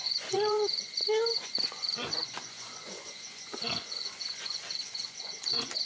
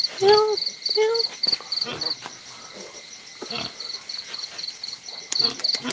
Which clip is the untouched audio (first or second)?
second